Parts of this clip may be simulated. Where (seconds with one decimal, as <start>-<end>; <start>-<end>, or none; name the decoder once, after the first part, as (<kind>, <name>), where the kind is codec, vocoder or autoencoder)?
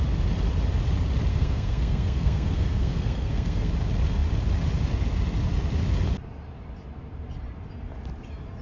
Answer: 1.3-3.7 (codec, SNAC)